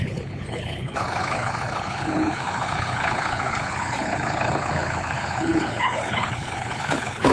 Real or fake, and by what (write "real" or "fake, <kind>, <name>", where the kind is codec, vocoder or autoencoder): fake, codec, HILCodec